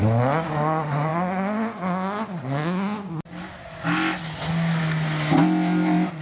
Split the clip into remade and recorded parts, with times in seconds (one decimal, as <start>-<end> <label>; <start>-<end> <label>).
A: 0.0-6.2 recorded

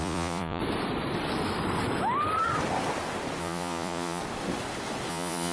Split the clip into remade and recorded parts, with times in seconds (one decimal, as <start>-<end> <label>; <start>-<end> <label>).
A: 0.0-0.6 remade; 0.6-3.4 recorded; 3.4-4.2 remade; 4.2-5.1 recorded; 5.1-5.5 remade